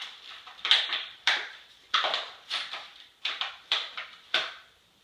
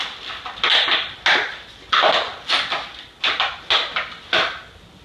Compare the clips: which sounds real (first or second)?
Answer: second